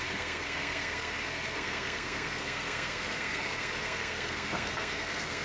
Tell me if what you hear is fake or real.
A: fake